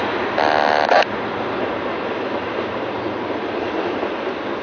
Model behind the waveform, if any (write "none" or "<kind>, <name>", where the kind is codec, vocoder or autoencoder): none